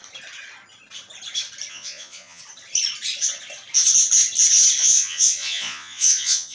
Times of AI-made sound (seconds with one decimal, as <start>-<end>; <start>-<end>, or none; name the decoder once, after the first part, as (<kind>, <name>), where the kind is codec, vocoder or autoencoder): 1.7-2.4 (vocoder, Vocos); 4.8-6.5

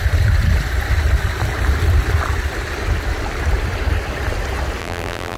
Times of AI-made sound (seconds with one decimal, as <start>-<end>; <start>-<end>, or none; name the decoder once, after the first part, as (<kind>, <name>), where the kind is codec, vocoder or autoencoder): 4.8-5.4 (vocoder, BigVGAN v2)